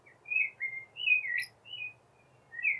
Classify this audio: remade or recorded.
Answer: recorded